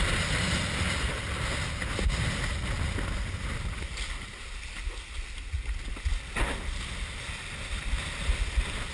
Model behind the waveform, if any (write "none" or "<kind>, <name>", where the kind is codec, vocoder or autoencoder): none